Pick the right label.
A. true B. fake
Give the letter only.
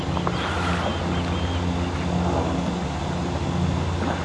A